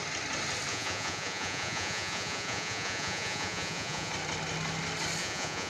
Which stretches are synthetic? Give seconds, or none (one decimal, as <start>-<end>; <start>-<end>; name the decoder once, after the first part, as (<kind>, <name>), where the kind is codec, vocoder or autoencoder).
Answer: 0.7-4.1 (vocoder, Vocos); 5.2-5.7

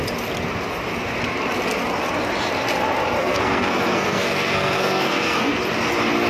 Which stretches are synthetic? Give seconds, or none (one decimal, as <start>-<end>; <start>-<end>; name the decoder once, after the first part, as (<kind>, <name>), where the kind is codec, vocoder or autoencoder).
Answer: 3.2-5.5 (codec, SNAC)

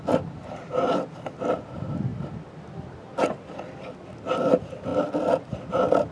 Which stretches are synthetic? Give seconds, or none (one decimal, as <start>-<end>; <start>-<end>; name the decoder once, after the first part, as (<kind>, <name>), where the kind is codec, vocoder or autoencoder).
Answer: none

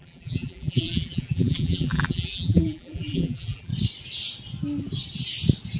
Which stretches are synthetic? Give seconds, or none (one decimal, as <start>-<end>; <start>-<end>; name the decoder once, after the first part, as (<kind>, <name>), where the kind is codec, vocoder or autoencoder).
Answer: 0.0-3.7 (vocoder, BigVGAN v2)

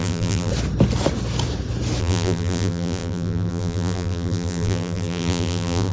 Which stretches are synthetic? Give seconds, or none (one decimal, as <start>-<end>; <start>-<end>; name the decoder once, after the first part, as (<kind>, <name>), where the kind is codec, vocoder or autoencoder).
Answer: 0.0-0.5 (vocoder, BigVGAN v2); 2.0-5.9

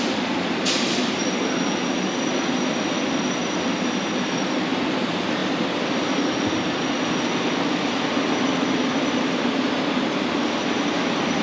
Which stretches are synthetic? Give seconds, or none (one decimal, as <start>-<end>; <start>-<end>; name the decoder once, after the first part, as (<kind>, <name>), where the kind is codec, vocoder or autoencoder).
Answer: none

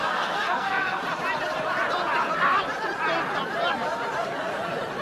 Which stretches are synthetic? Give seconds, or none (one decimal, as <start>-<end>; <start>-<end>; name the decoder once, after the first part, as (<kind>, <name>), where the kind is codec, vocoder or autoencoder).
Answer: 0.0-1.0 (codec, SNAC)